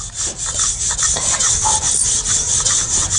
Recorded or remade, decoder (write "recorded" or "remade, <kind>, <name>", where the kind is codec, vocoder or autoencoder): recorded